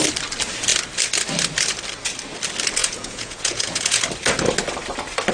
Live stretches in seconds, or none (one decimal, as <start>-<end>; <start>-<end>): 0.0-2.8; 4.0-5.3